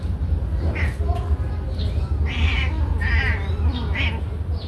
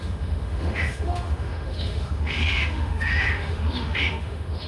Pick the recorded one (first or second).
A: first